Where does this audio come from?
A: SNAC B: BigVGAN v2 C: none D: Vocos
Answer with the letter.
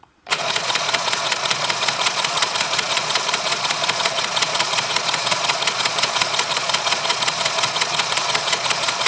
D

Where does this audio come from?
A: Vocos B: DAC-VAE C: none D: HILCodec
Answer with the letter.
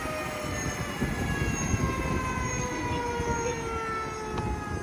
C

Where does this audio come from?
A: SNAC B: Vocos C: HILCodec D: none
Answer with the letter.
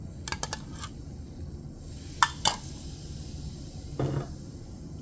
D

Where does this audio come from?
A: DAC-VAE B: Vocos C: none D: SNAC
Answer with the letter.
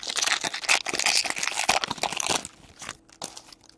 C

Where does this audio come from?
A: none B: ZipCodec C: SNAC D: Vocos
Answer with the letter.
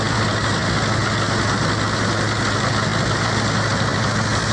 A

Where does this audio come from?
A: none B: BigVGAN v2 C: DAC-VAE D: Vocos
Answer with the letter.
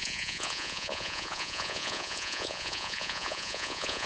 D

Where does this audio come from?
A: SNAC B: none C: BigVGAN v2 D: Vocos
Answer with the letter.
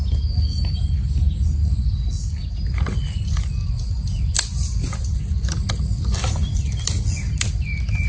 B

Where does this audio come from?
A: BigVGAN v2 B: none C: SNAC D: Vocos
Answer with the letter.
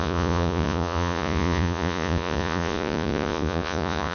D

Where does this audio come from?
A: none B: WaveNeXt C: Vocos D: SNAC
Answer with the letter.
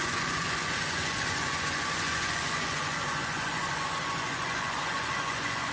C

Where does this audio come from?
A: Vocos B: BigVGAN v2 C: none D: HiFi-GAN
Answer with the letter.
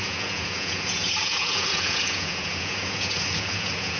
A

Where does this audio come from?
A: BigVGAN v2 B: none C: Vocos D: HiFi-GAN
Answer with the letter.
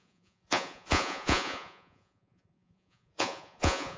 C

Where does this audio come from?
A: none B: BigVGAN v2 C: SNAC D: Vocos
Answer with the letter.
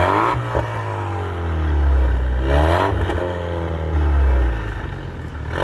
A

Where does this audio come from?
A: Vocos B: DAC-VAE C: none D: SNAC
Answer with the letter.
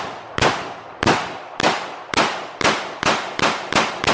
C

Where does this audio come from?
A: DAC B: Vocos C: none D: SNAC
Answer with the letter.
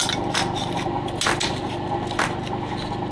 C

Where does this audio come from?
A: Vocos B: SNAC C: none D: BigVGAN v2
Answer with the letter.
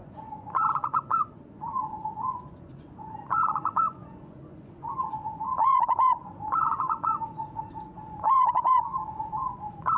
A